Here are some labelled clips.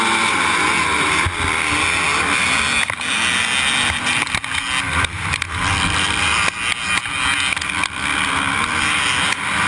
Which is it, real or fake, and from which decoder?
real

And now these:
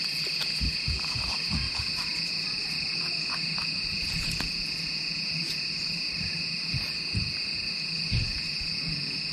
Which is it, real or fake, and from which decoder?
fake, vocoder, Vocos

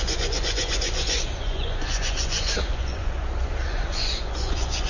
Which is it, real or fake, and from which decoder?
fake, vocoder, Vocos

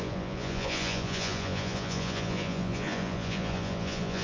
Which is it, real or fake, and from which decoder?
fake, vocoder, Vocos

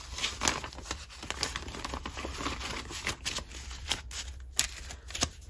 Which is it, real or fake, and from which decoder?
real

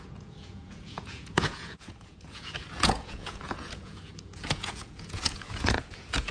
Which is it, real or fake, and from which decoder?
fake, vocoder, Vocos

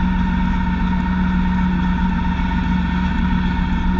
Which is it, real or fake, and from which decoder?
real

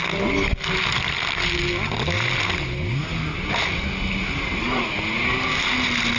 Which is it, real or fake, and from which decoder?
real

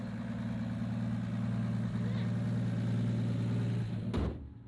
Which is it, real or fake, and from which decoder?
real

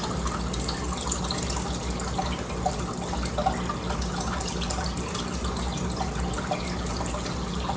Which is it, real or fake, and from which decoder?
real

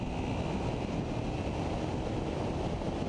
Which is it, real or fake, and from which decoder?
real